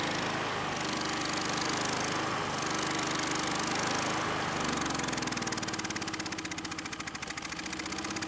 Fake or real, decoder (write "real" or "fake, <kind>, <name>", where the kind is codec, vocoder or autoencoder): real